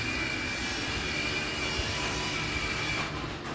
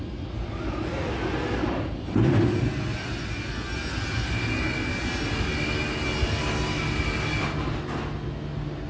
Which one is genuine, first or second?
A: second